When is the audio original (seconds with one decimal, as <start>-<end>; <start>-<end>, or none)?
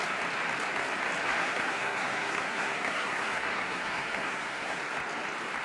0.0-1.4; 4.8-5.6